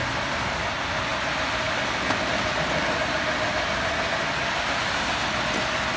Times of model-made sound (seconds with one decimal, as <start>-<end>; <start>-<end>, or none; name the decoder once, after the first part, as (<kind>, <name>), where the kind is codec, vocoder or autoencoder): none